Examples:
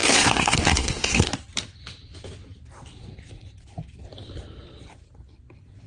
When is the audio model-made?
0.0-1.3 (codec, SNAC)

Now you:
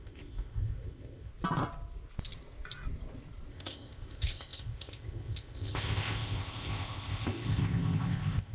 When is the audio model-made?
0.0-1.3 (codec, ZipCodec); 3.5-8.5

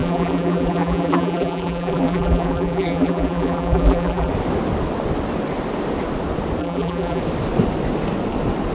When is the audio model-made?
0.0-4.3 (vocoder, BigVGAN v2); 6.6-7.2

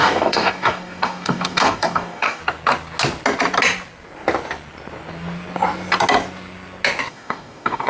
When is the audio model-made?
0.0-2.4 (codec, DAC); 7.1-7.9